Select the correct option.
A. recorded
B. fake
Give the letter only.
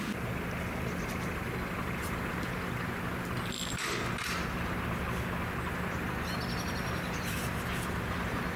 A